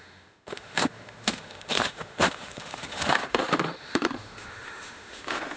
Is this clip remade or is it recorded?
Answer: remade